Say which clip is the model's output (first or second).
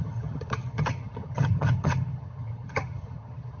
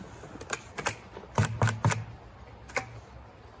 first